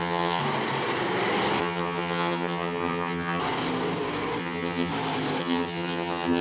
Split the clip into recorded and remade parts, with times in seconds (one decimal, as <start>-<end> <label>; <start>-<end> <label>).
0.0-0.4 remade; 0.4-1.6 recorded; 1.6-3.4 remade; 3.4-4.4 recorded; 4.4-4.9 remade; 4.9-5.4 recorded; 5.4-6.4 remade